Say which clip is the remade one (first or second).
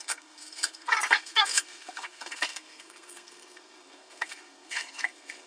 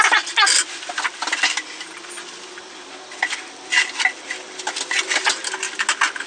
first